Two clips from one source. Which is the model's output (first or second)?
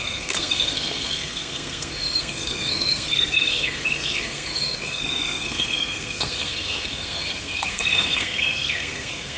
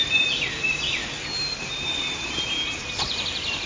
first